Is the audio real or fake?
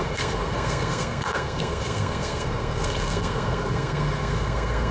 fake